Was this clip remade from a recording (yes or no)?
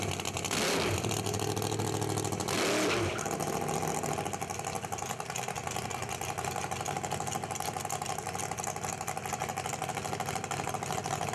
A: no